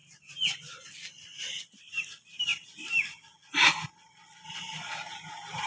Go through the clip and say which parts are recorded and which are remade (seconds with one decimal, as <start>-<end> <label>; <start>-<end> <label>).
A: 0.0-5.7 recorded